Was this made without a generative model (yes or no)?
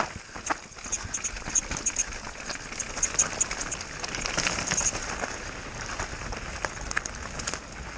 yes